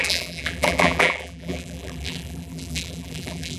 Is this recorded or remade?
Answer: remade